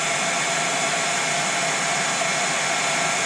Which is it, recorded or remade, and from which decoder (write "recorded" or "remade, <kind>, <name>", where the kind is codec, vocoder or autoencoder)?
recorded